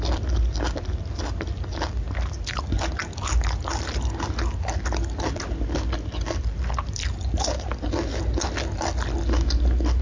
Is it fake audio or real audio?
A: real